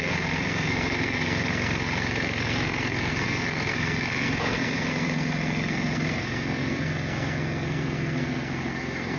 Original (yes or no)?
no